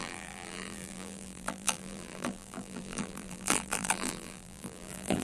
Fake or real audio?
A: fake